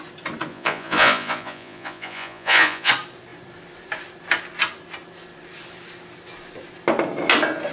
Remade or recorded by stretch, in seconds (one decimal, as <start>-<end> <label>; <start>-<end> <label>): 0.0-0.5 recorded; 0.5-2.9 remade; 2.9-7.7 recorded